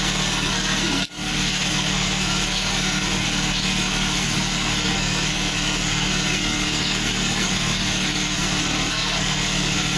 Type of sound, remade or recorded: remade